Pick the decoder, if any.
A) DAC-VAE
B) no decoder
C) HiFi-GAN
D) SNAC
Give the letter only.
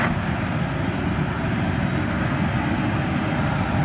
B